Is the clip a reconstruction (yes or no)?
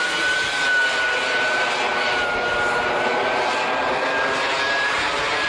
no